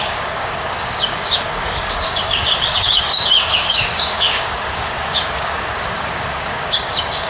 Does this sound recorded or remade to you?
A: remade